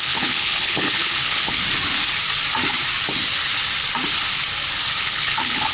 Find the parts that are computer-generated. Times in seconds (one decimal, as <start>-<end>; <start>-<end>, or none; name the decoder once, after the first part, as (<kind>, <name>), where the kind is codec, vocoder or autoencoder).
0.0-1.6 (codec, HILCodec); 5.0-5.7